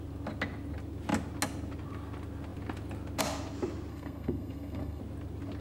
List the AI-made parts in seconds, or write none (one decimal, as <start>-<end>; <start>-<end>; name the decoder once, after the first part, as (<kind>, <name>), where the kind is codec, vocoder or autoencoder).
3.9-5.0 (codec, SNAC)